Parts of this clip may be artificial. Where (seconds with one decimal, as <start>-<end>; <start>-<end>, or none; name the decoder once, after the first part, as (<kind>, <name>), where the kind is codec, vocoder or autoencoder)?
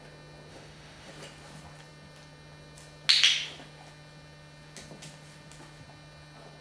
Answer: 0.5-1.1 (autoencoder, DAC-VAE)